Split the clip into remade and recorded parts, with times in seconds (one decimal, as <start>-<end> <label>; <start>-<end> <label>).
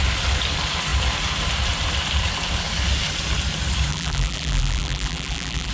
0.0-3.9 recorded; 3.9-5.7 remade